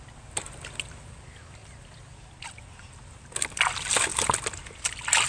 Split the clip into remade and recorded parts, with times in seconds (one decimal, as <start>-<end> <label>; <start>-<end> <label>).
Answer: 0.0-5.3 recorded